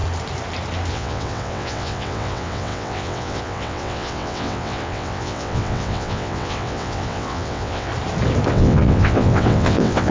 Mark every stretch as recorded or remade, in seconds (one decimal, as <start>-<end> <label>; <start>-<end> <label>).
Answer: 0.0-0.9 recorded; 0.9-7.9 remade; 7.9-8.5 recorded; 8.5-10.1 remade